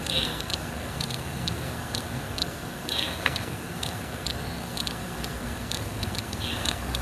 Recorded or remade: remade